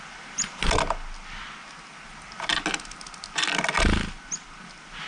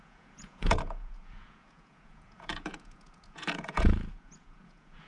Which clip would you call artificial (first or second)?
second